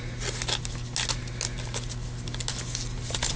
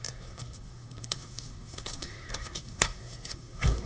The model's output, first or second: second